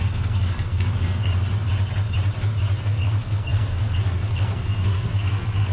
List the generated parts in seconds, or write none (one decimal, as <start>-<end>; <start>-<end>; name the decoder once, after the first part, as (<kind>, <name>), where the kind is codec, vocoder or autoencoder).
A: 0.0-1.3 (codec, SNAC); 2.8-5.7